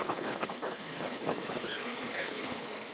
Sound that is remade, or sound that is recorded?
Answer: remade